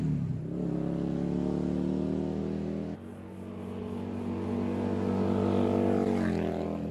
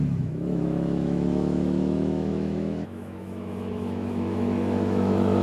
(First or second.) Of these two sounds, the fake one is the second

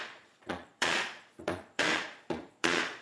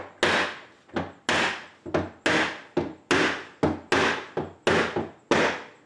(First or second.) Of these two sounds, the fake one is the first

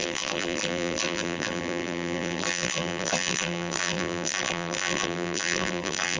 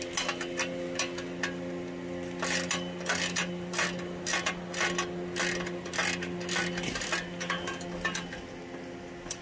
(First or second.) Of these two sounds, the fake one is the first